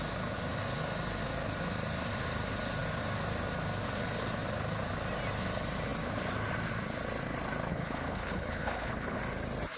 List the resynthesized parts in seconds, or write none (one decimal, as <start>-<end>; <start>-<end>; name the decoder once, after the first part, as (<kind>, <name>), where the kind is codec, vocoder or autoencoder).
7.7-9.2 (codec, HILCodec)